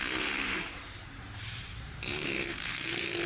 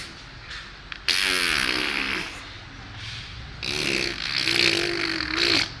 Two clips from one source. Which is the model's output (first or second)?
first